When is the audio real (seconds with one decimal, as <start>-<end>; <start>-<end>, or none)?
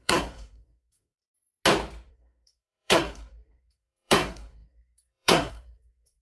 1.2-2.1